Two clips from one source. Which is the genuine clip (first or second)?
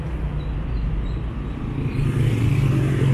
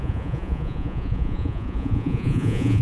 first